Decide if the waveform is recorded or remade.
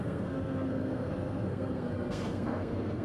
remade